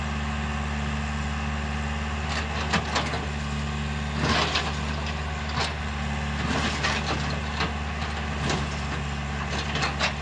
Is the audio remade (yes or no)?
no